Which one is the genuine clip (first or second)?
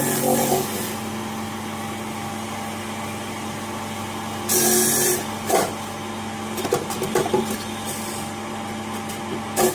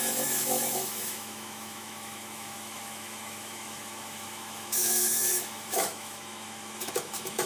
first